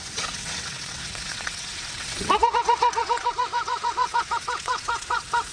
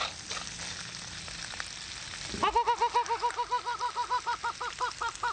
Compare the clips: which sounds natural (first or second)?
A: second